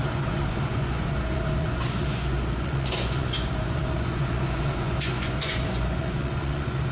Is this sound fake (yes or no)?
yes